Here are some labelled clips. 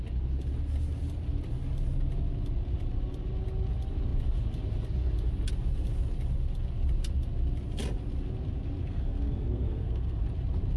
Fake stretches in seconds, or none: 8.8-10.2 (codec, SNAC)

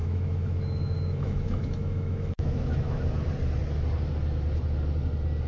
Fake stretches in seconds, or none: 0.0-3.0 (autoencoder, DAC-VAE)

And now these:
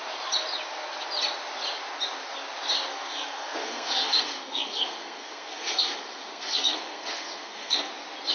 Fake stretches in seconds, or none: 2.9-7.9 (codec, SNAC)